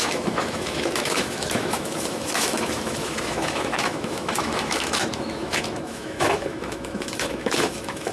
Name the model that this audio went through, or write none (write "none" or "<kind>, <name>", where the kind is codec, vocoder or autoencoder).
autoencoder, DAC-VAE